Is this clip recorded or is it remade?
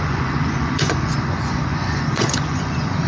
remade